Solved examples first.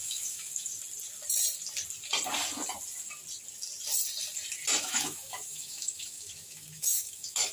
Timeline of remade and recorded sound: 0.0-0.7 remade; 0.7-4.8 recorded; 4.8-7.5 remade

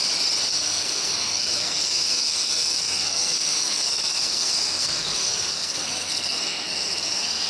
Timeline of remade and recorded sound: 0.0-0.5 recorded; 0.5-7.5 remade

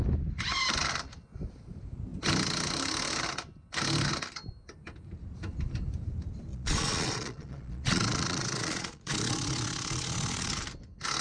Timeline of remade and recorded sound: 0.0-6.5 recorded; 6.5-10.5 remade; 10.5-11.2 recorded